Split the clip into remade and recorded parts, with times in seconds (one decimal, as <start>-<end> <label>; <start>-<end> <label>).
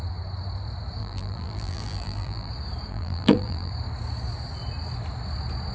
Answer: 0.0-1.0 recorded; 1.0-2.5 remade; 2.5-2.9 recorded; 2.9-3.7 remade; 3.7-5.7 recorded